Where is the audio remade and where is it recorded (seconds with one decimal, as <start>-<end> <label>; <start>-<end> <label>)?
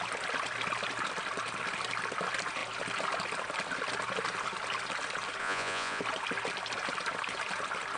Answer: 0.0-5.4 recorded; 5.4-6.0 remade; 6.0-8.0 recorded